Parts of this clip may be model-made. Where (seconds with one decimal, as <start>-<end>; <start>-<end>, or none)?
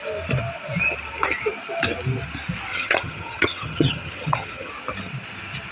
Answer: 2.7-4.7